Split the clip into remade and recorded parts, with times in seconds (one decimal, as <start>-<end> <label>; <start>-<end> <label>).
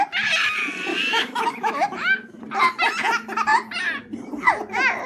0.0-0.9 recorded; 0.9-2.4 remade; 2.4-5.1 recorded